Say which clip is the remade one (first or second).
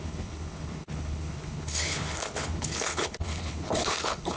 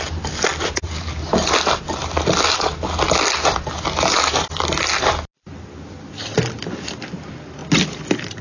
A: first